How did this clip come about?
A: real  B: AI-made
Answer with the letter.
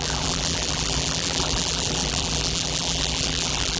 B